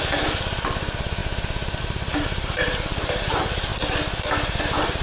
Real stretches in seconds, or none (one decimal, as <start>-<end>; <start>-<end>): 1.2-1.8; 3.7-4.6